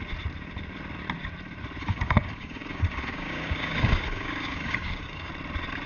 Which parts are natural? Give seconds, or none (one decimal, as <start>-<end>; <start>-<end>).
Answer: 0.0-1.8; 5.3-5.9